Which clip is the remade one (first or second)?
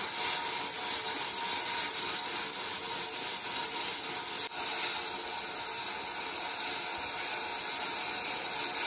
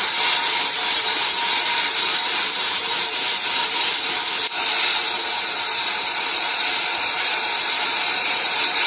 second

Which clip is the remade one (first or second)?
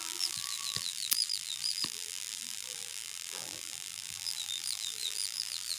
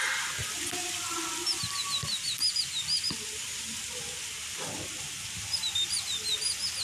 first